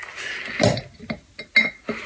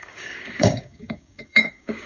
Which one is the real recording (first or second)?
first